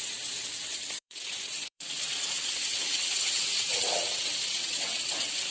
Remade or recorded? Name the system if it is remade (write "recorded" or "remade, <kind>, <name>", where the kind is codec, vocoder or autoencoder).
remade, vocoder, WaveNeXt